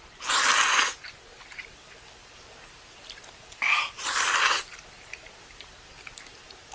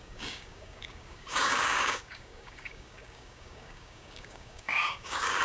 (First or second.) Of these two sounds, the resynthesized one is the second